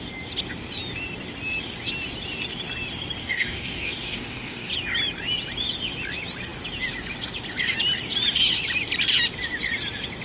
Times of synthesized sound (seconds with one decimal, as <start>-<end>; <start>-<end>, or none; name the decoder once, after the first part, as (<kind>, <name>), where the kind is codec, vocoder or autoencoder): 3.2-4.7 (codec, DAC)

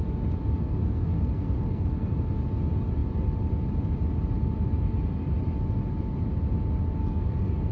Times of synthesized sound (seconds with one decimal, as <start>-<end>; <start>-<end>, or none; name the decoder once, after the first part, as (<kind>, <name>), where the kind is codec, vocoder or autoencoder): 0.6-2.1 (codec, SNAC); 7.0-7.7

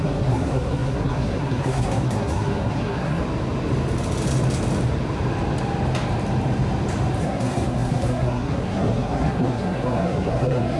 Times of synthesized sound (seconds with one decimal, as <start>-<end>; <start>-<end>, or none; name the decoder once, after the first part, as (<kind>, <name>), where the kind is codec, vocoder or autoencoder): 0.0-3.2 (codec, SNAC); 7.2-10.8